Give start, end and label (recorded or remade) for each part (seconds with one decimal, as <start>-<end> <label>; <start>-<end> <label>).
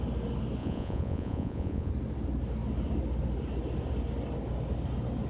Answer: 0.0-0.6 recorded; 0.6-1.9 remade; 1.9-5.3 recorded